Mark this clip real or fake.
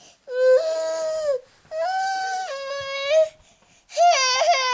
real